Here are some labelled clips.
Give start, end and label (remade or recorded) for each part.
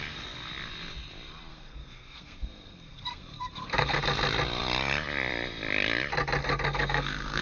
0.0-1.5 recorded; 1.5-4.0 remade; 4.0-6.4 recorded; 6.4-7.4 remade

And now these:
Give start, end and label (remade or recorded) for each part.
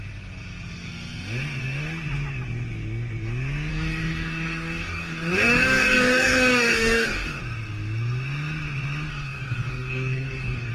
0.0-3.7 recorded; 3.7-7.4 remade; 7.4-9.1 recorded; 9.1-10.7 remade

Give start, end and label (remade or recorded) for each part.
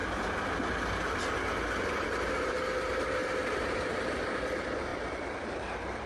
0.0-1.9 recorded; 1.9-3.2 remade; 3.2-3.7 recorded; 3.7-6.1 remade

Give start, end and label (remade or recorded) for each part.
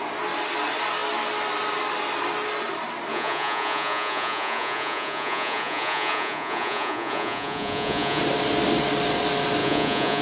0.0-3.1 recorded; 3.1-8.2 remade; 8.2-9.6 recorded; 9.6-10.2 remade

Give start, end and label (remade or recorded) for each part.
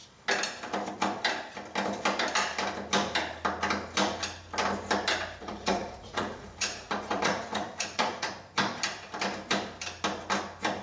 0.0-5.4 recorded; 5.4-8.3 remade; 8.3-10.8 recorded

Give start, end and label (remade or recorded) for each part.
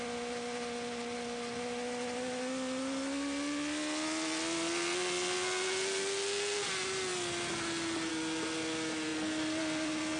0.0-10.2 recorded